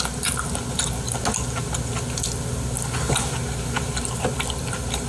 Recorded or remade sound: recorded